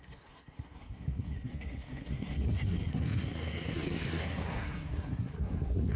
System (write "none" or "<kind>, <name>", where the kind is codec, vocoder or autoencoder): codec, SNAC